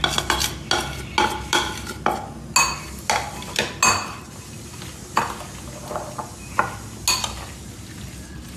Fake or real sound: real